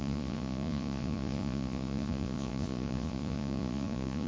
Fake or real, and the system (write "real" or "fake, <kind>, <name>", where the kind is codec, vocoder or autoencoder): fake, vocoder, Vocos